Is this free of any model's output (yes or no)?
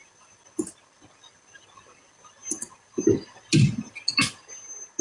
yes